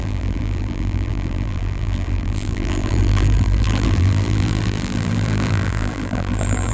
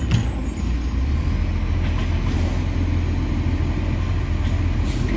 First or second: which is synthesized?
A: first